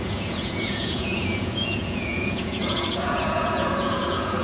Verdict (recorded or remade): remade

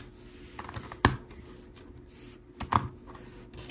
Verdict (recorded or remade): recorded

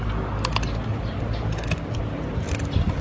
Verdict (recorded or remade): recorded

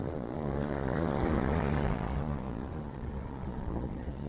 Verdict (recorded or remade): remade